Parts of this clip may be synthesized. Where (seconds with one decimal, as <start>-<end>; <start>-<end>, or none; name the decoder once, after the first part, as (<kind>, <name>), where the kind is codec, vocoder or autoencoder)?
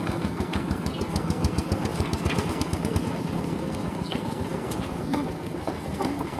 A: 0.0-6.4 (codec, SNAC)